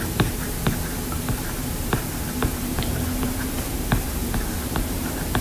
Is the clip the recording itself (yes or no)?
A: no